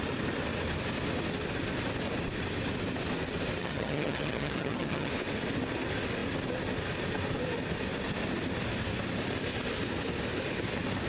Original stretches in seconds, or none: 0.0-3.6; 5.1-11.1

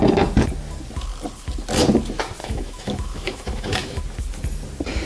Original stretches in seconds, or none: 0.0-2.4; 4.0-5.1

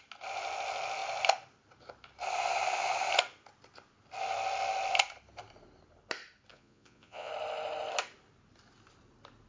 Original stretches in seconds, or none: 0.0-6.5; 7.3-9.5

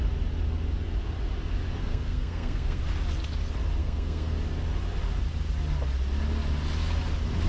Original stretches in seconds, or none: 0.0-1.8; 2.8-3.8; 4.3-7.5

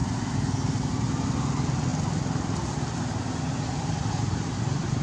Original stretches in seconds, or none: 0.0-5.0

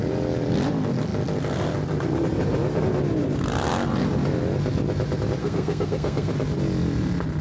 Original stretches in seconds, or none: 0.0-5.4; 6.3-7.4